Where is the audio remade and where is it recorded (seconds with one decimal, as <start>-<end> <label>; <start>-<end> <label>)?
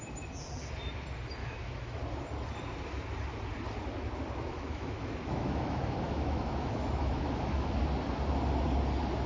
0.0-1.4 recorded; 1.4-2.0 remade; 2.0-4.5 recorded; 4.5-7.8 remade; 7.8-9.3 recorded